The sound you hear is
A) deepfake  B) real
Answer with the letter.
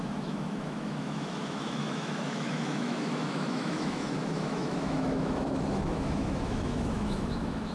A